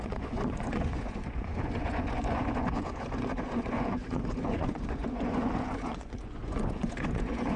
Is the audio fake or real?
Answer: fake